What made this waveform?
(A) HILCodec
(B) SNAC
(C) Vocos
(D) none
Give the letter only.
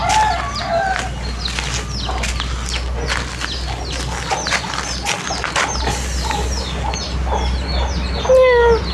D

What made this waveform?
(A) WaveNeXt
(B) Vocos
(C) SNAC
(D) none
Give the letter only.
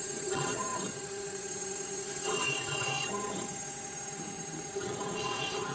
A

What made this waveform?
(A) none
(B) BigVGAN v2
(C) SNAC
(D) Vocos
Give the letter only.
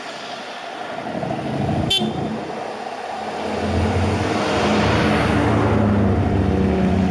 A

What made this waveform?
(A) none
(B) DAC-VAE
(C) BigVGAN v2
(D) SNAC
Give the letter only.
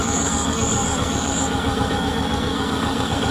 D